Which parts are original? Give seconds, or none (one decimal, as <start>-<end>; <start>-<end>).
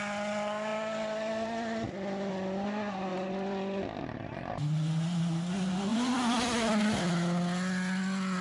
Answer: 0.0-0.7; 2.3-3.1; 4.6-5.9; 6.8-8.4